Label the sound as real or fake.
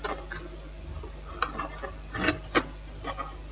real